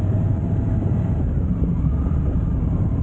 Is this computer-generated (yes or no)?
yes